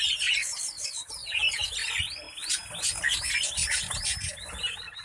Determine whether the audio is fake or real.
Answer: real